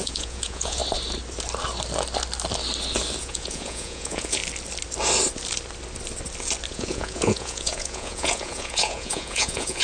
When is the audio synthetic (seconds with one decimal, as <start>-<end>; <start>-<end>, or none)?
0.0-0.8; 3.2-4.4; 6.7-9.8